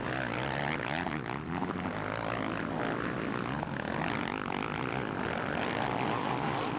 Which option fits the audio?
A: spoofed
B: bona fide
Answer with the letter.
B